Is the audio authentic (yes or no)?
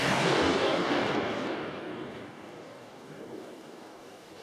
no